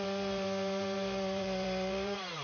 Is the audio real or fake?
fake